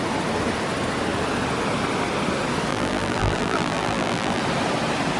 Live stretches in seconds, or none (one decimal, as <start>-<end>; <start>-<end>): 0.0-2.7; 4.4-5.2